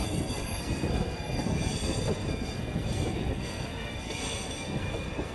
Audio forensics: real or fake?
fake